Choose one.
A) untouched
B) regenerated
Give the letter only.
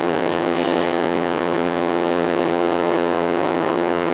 B